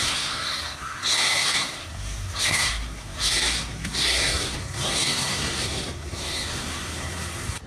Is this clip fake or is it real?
fake